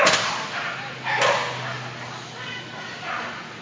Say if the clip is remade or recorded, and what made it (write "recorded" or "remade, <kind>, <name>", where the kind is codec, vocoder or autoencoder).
recorded